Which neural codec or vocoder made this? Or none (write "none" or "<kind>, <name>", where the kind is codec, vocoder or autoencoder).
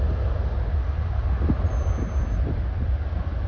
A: none